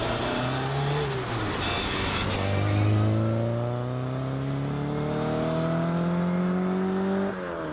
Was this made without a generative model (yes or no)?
yes